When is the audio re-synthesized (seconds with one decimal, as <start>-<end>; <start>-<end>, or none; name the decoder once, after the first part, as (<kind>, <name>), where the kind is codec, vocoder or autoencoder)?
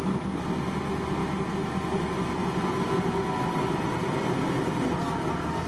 none